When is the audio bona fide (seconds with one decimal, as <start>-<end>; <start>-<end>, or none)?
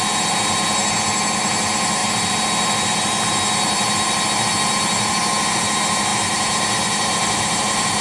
0.0-8.0